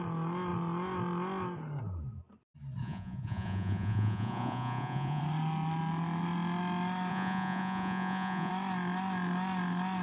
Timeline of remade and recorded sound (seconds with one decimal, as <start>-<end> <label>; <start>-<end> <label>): 0.0-2.8 recorded; 2.8-5.2 remade; 5.2-7.1 recorded; 7.1-8.5 remade; 8.5-10.0 recorded